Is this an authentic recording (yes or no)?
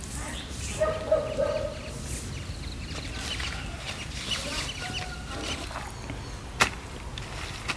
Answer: yes